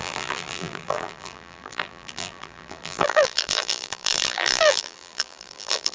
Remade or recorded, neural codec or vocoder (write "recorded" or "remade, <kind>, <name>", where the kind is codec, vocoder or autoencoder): remade, vocoder, BigVGAN v2